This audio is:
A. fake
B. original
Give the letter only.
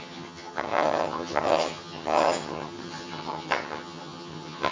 A